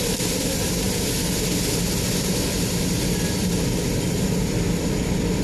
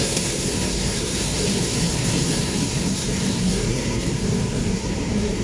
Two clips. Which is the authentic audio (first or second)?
first